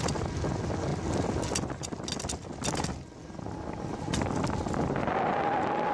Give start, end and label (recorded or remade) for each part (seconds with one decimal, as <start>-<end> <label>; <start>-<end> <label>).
0.0-5.9 recorded